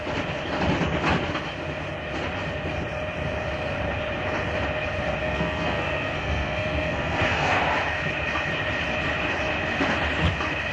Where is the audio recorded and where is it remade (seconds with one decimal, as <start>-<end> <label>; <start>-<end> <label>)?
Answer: 0.0-5.2 recorded; 5.2-7.6 remade; 7.6-10.7 recorded